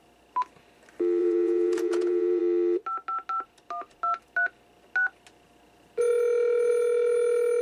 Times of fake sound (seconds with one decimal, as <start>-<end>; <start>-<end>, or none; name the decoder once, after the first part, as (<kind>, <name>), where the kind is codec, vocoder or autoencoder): 1.2-2.4 (vocoder, Vocos)